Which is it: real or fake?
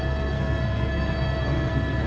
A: fake